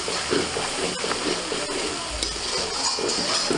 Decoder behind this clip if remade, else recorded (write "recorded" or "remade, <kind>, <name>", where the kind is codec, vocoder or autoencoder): recorded